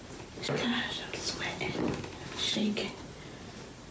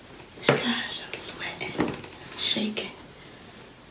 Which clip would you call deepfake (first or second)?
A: first